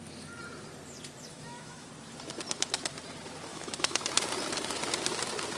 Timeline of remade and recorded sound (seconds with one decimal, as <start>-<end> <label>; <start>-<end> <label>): 0.0-1.3 recorded; 1.3-1.9 remade; 1.9-3.5 recorded; 3.5-4.0 remade; 4.0-5.6 recorded